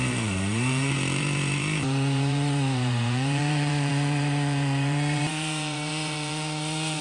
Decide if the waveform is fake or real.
fake